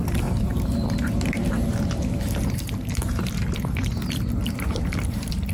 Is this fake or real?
fake